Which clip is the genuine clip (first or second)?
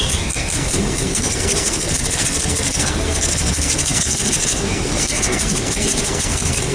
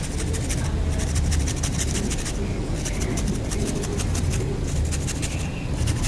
second